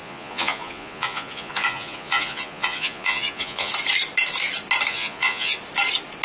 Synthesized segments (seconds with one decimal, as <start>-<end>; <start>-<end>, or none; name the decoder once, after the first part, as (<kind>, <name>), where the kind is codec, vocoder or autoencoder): 0.0-3.7 (vocoder, Vocos); 4.9-5.6